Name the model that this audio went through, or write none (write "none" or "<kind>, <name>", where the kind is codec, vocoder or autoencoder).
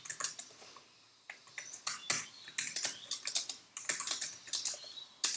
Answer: none